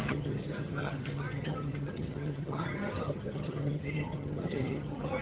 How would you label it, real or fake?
fake